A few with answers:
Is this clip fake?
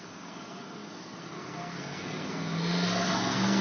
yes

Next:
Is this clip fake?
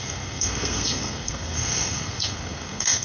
yes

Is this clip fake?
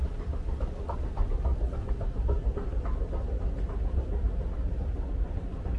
no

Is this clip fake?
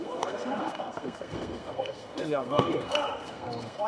yes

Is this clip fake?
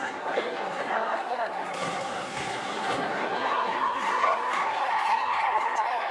yes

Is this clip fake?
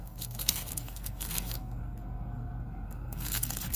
yes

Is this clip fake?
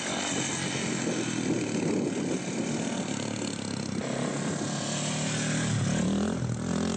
no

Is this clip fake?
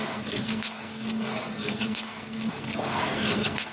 yes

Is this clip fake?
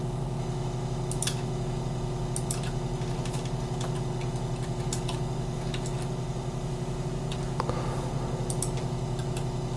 no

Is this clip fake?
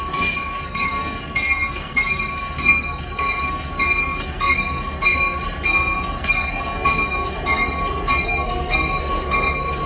yes